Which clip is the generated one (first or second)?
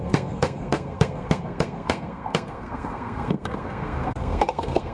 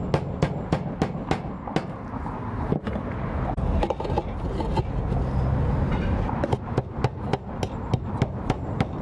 first